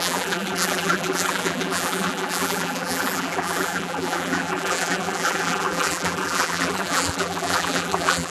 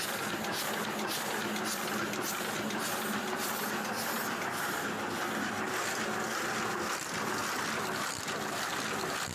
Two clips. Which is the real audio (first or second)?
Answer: second